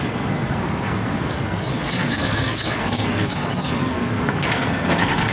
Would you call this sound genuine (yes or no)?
no